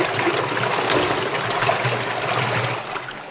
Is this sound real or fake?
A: real